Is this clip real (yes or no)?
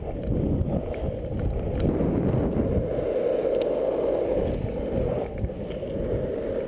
yes